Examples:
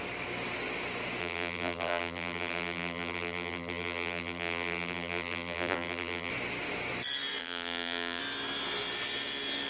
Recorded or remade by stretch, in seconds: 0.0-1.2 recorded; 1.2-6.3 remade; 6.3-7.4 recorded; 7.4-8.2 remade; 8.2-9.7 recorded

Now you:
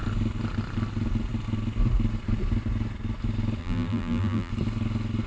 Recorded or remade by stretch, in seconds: 0.0-3.6 recorded; 3.6-4.5 remade; 4.5-5.3 recorded